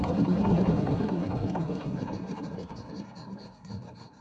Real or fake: fake